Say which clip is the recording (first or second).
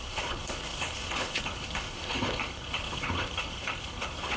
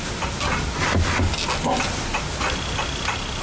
second